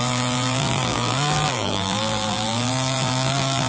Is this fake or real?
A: fake